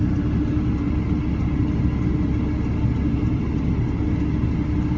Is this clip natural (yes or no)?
yes